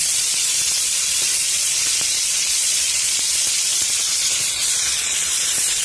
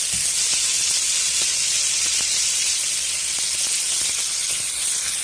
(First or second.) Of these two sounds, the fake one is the first